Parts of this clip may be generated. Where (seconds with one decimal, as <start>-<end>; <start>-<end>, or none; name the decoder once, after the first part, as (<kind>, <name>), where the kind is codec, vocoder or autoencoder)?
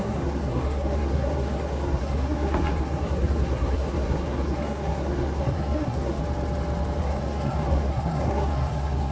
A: 0.0-6.2 (codec, SNAC); 7.0-9.1